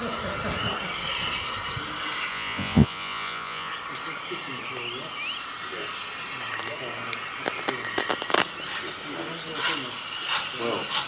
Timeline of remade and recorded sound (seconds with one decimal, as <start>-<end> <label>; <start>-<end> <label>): 0.0-2.3 recorded; 2.3-3.7 remade; 3.7-11.1 recorded